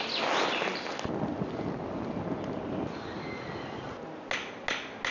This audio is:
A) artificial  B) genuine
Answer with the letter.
B